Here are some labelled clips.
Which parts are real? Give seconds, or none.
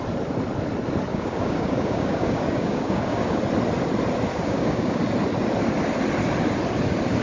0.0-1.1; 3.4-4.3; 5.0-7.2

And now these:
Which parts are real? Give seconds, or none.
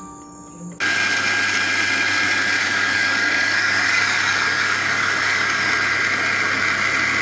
0.0-2.6; 5.7-7.2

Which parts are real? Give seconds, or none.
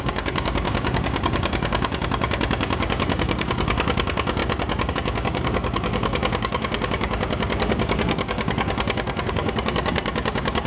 4.4-4.9